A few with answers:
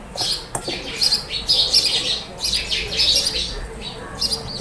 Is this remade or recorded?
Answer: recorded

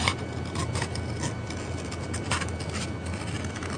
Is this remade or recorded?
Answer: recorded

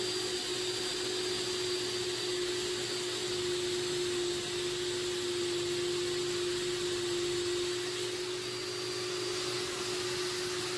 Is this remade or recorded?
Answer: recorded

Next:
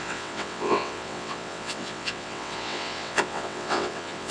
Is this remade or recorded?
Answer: remade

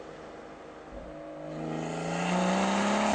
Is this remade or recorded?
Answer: recorded